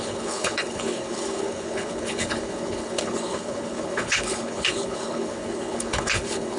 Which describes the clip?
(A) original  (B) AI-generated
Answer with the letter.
B